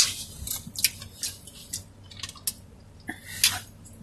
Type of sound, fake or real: real